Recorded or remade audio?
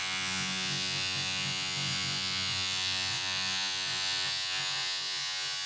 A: remade